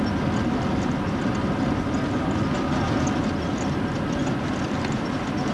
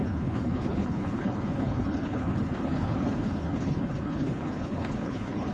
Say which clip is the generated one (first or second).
second